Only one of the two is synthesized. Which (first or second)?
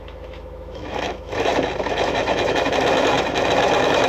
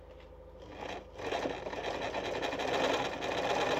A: first